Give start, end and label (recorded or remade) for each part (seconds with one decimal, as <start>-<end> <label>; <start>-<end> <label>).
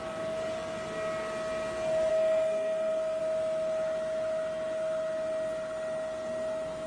0.0-2.1 recorded; 2.1-3.2 remade; 3.2-6.9 recorded